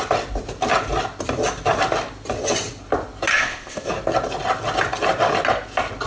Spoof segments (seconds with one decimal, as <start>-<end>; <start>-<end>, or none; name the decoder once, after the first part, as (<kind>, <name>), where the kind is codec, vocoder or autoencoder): 3.3-3.9 (codec, ZipCodec)